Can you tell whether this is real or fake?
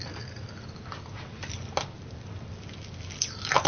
real